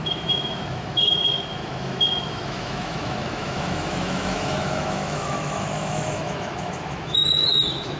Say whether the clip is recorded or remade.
remade